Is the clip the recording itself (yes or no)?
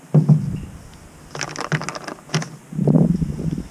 yes